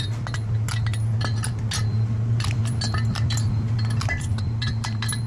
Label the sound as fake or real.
real